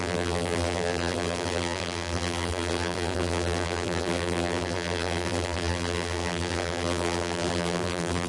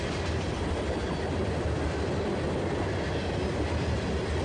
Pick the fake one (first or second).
first